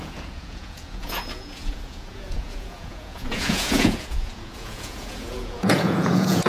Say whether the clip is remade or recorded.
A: remade